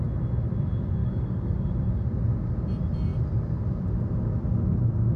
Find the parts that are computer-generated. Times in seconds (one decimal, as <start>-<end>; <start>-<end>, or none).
1.0-1.7